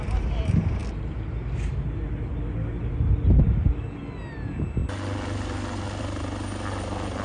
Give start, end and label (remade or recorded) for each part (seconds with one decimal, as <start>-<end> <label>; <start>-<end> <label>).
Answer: 0.0-7.2 recorded